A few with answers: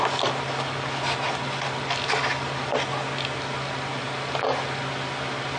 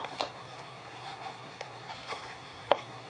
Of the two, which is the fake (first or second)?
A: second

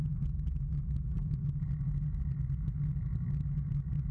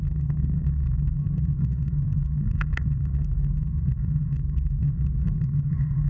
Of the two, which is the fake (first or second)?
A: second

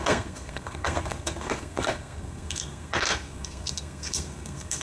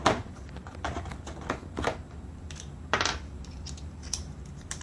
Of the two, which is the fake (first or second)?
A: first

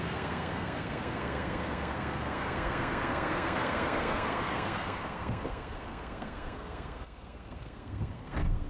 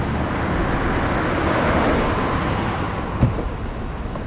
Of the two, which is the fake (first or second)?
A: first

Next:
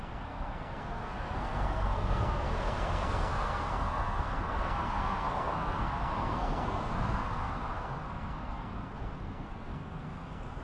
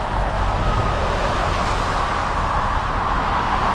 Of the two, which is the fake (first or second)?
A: first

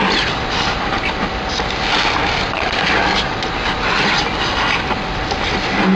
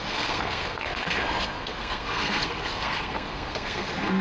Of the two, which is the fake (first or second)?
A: second